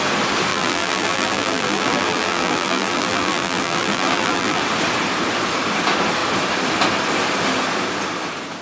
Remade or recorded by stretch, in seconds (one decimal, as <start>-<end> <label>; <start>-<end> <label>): 0.0-0.5 recorded; 0.5-4.6 remade; 4.6-8.6 recorded